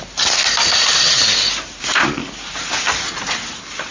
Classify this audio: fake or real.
real